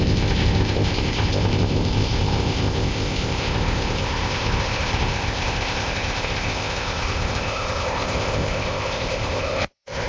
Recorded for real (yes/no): no